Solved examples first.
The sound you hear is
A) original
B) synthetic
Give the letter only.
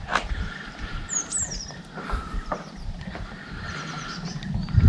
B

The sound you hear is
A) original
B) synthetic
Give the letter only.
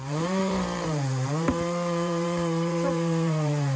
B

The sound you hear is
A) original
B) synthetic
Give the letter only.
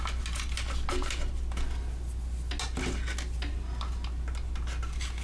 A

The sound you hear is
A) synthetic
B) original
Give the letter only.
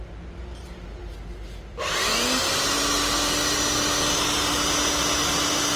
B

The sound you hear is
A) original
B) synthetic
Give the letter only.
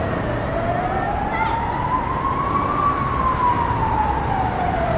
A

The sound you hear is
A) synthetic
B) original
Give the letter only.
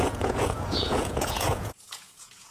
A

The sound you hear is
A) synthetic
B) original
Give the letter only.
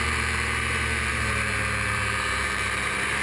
A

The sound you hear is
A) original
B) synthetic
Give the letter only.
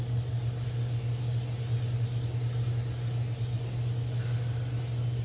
A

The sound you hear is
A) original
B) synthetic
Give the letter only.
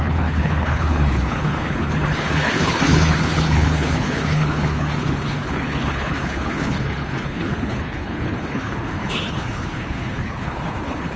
B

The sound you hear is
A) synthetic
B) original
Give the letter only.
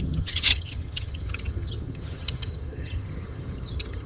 A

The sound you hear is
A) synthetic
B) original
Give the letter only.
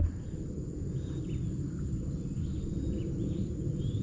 B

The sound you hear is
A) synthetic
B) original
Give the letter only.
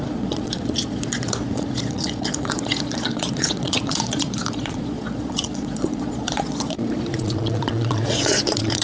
A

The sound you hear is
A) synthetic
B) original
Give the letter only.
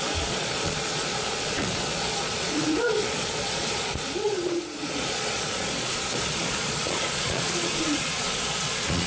A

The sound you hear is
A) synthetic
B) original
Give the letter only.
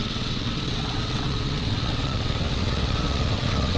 A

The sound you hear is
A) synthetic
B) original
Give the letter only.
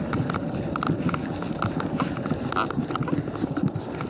B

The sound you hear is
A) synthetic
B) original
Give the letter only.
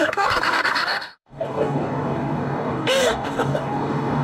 A